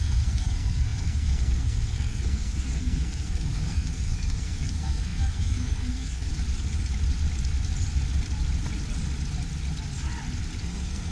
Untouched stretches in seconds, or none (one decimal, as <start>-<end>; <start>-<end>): 6.3-10.6